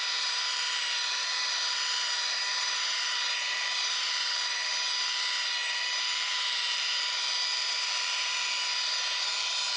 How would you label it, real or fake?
fake